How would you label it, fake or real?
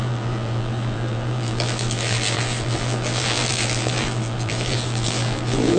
fake